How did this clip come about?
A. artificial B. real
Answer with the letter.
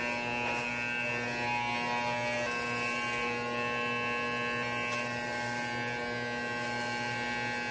B